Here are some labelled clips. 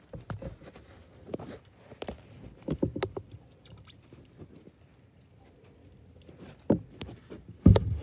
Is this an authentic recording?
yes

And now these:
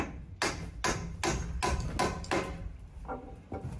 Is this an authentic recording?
yes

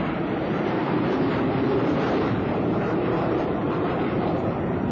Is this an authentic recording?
no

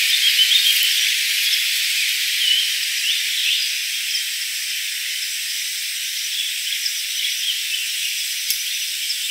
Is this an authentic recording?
yes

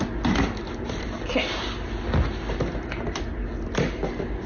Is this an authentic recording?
yes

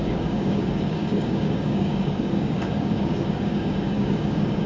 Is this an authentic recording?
no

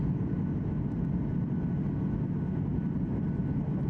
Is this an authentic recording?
yes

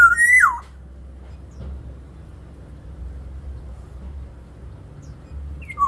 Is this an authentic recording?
yes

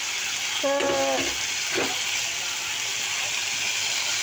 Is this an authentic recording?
yes